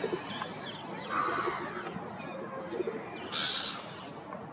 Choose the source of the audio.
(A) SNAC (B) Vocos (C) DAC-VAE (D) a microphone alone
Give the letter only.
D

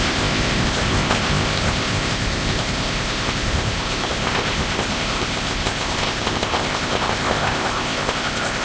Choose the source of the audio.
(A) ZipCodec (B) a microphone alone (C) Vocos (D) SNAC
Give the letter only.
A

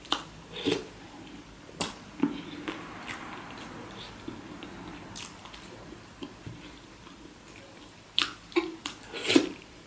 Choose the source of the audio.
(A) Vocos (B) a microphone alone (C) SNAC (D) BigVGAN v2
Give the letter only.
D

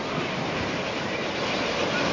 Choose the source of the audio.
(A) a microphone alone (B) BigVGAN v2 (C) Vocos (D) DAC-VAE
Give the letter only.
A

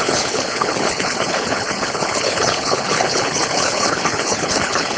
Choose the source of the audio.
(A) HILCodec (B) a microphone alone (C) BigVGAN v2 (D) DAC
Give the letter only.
A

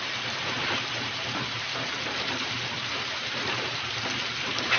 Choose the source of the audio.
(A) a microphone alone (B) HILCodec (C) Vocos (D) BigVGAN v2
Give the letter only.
D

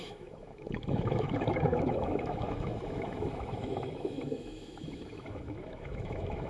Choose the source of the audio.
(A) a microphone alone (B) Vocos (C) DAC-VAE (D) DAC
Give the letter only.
C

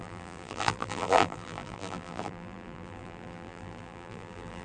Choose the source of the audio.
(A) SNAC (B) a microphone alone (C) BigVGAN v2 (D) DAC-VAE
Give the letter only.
C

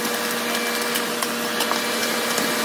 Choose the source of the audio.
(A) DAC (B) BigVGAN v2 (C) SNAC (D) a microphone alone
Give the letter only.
D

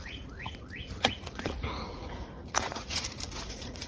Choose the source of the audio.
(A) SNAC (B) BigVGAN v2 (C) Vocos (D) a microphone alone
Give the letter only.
C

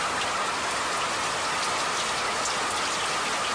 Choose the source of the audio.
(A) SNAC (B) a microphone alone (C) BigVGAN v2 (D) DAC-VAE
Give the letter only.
B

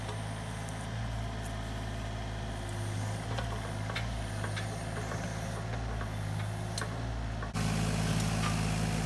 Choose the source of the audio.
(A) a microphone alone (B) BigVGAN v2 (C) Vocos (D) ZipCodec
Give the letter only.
A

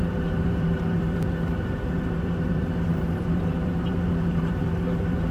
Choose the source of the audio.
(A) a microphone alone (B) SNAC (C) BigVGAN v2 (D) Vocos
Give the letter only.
C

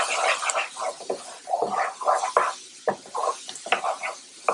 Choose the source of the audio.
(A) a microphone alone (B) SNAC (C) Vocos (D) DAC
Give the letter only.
A